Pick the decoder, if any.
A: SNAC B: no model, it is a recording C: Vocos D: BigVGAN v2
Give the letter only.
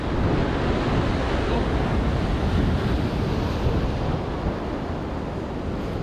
B